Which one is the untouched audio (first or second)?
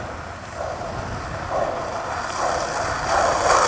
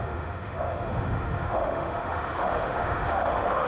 first